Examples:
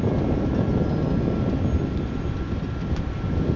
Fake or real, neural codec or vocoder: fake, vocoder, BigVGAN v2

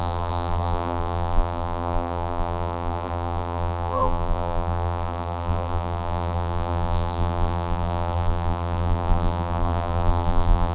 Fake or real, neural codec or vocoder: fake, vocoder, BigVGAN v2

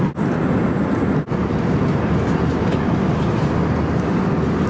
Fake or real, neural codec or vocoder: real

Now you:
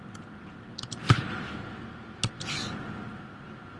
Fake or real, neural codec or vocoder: real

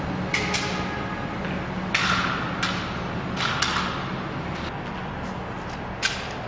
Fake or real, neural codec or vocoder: real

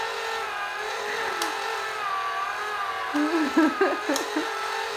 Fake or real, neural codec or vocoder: real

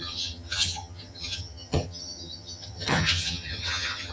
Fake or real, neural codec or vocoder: fake, vocoder, HiFi-GAN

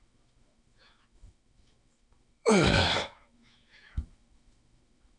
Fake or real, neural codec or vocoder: fake, autoencoder, DAC-VAE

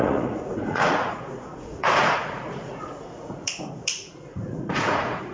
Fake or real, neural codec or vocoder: fake, vocoder, Vocos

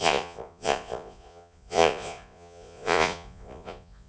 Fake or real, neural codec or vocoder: fake, vocoder, Vocos